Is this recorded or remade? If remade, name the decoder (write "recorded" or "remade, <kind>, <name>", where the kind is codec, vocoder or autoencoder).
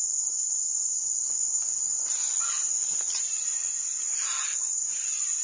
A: recorded